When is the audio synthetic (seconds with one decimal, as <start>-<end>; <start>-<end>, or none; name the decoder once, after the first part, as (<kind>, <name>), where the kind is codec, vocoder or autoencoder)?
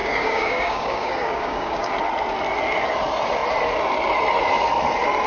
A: 0.0-1.9 (codec, DAC)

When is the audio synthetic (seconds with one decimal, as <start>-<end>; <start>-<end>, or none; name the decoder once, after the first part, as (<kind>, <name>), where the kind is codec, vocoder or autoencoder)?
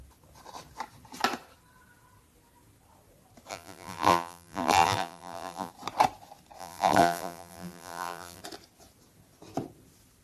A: 3.5-5.7 (vocoder, BigVGAN v2); 6.6-8.4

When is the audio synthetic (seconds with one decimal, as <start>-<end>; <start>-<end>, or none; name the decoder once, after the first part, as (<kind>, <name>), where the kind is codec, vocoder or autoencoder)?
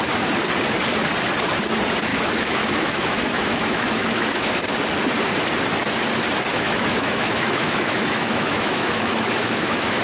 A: 2.1-4.5 (autoencoder, DAC-VAE); 6.5-10.0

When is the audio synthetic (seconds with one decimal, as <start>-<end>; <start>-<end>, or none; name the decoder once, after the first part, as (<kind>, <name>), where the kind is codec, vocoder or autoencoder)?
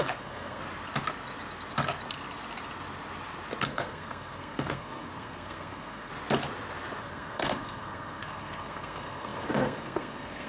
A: 0.0-0.6 (codec, SNAC); 3.6-6.1; 7.0-10.5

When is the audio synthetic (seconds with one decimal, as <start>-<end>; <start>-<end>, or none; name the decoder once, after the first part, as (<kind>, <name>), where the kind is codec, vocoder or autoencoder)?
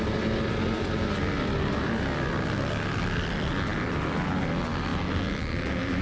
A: 3.7-4.3 (vocoder, BigVGAN v2)